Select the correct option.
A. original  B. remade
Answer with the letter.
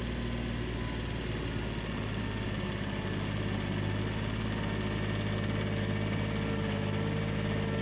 A